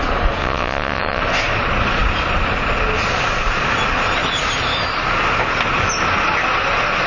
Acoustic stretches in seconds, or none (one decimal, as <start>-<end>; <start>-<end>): 0.0-0.4; 1.2-7.1